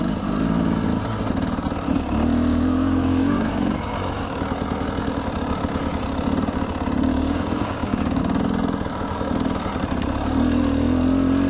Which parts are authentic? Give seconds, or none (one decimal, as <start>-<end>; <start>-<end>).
0.0-2.5; 3.9-7.1; 8.2-11.5